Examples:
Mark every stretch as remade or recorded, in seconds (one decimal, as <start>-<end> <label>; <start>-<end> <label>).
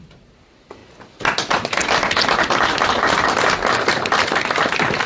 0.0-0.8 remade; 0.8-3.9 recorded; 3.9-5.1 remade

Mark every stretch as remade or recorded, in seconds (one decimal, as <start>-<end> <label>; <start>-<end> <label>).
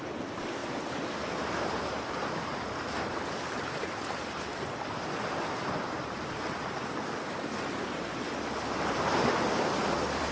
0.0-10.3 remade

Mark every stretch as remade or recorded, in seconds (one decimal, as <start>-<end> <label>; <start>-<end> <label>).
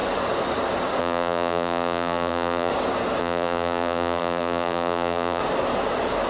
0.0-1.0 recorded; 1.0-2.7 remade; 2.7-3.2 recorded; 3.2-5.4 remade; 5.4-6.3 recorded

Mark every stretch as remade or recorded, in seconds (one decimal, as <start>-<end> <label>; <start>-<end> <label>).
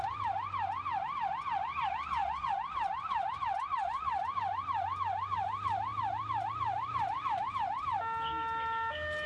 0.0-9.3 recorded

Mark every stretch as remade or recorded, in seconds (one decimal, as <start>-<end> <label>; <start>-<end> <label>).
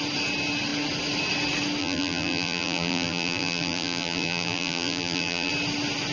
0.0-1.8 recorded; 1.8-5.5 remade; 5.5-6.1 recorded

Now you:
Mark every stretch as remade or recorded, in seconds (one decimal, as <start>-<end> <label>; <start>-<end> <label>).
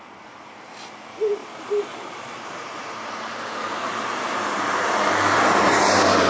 0.0-1.4 recorded; 1.4-5.2 remade; 5.2-6.3 recorded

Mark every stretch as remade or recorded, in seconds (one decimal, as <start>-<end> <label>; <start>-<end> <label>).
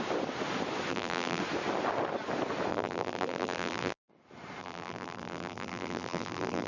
0.0-0.9 recorded; 0.9-1.4 remade; 1.4-2.7 recorded; 2.7-4.1 remade; 4.1-4.6 recorded; 4.6-6.7 remade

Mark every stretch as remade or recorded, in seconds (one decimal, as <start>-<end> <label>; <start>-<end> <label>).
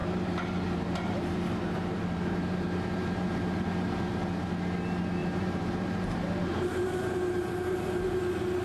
0.0-4.5 remade; 4.5-5.2 recorded; 5.2-8.2 remade; 8.2-8.6 recorded